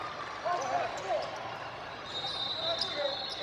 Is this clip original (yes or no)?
yes